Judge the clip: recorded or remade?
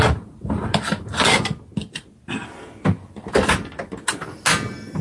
recorded